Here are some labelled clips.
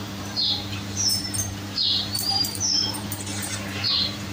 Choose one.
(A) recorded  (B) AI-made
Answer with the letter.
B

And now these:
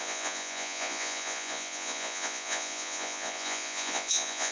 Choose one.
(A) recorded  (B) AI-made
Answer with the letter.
B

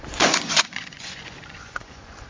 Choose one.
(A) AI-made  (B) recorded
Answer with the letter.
A